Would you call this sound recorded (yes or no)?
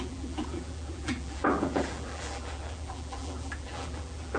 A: no